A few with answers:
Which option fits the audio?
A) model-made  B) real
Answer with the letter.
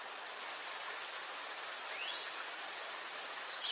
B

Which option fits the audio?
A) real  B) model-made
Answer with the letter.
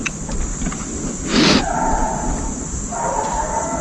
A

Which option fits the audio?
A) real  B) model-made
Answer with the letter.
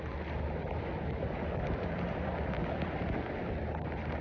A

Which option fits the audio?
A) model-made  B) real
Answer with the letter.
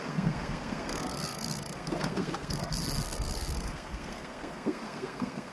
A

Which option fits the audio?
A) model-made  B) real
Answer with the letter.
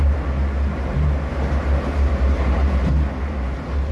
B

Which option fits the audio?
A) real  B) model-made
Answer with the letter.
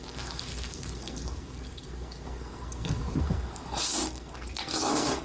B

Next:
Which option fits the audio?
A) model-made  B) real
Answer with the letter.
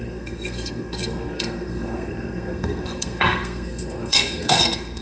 A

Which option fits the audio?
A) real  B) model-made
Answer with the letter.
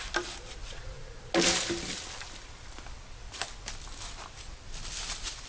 A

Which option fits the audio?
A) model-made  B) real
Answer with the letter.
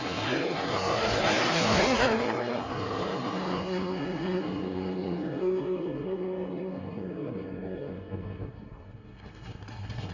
A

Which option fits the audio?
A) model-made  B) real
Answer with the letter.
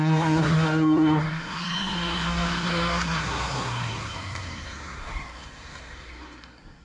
A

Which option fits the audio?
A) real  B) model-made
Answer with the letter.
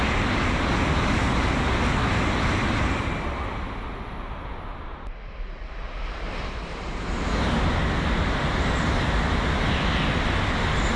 A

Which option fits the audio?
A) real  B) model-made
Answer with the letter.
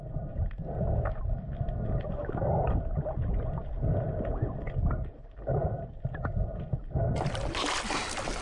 A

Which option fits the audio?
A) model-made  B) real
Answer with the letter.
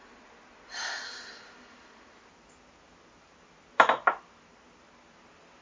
B